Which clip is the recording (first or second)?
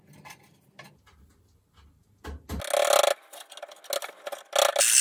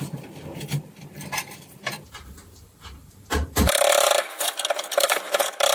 first